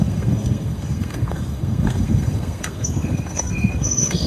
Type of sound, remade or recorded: remade